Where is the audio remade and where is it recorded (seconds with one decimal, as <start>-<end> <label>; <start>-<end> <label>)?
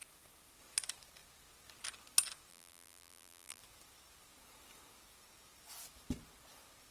0.0-2.5 recorded; 2.5-3.6 remade; 3.6-6.9 recorded